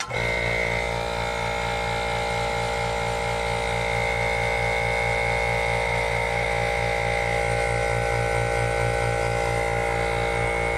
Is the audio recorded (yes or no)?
yes